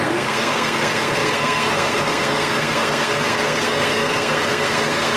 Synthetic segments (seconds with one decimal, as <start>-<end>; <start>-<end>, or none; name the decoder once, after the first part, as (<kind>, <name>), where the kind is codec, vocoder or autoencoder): 0.0-5.2 (codec, SNAC)